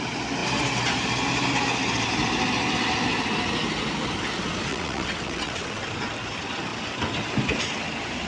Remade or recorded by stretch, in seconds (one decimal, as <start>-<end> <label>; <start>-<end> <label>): 0.0-4.7 recorded; 4.7-5.8 remade; 5.8-8.3 recorded

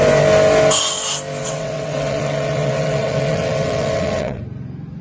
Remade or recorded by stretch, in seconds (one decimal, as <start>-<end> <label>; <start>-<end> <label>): 0.0-1.4 recorded; 1.4-4.4 remade; 4.4-5.0 recorded

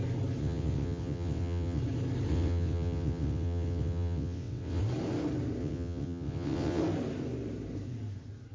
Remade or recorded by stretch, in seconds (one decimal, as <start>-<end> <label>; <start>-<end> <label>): 0.0-0.4 recorded; 0.4-1.8 remade; 1.8-2.3 recorded; 2.3-4.8 remade; 4.8-5.6 recorded; 5.6-6.8 remade; 6.8-8.5 recorded

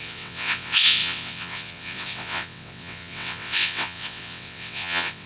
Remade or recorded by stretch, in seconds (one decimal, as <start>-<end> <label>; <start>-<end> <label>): 0.0-5.3 remade